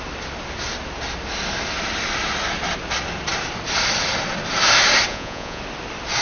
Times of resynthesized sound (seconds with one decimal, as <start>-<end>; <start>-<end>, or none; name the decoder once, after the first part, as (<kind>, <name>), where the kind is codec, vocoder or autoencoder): 5.1-5.6 (vocoder, Vocos)